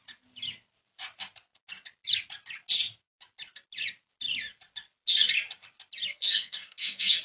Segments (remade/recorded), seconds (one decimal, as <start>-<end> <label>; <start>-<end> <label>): 0.0-6.1 recorded; 6.1-7.2 remade